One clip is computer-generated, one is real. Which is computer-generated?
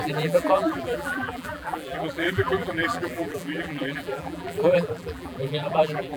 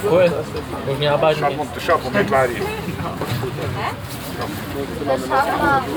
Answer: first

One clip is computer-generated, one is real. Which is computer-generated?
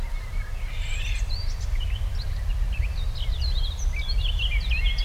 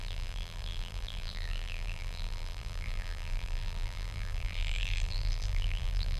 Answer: second